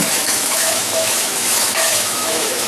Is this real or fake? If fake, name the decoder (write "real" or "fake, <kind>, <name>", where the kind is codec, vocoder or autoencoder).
fake, autoencoder, DAC-VAE